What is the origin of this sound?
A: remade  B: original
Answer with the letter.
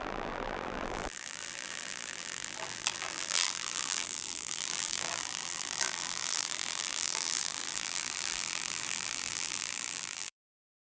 A